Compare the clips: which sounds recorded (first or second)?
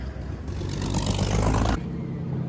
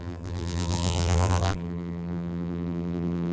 first